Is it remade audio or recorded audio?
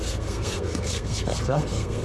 remade